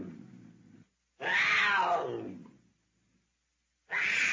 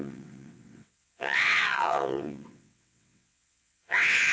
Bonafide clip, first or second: first